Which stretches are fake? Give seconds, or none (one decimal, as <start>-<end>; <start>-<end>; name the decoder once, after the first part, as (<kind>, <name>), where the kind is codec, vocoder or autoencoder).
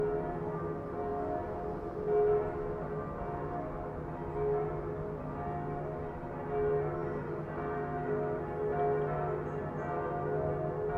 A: none